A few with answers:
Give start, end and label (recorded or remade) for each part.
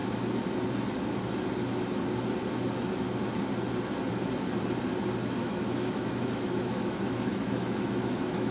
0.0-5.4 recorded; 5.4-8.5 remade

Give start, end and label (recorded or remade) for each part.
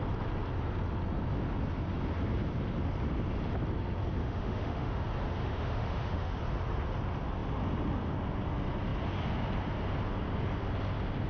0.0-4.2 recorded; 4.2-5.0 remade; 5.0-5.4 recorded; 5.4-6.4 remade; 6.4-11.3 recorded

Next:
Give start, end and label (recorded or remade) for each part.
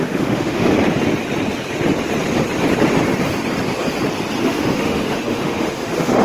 0.0-0.7 remade; 0.7-4.4 recorded; 4.4-6.2 remade